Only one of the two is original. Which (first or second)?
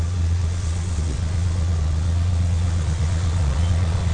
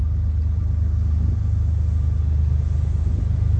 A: second